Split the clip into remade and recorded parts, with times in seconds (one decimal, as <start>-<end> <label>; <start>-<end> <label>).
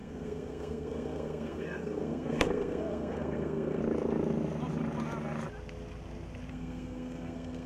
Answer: 0.0-3.8 remade; 3.8-6.5 recorded; 6.5-7.7 remade